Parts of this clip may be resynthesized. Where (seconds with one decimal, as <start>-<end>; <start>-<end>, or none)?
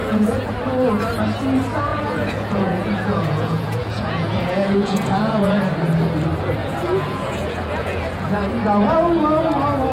0.0-0.5; 1.9-5.6; 6.6-8.5